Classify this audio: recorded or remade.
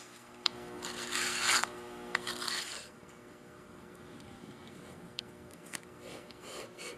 remade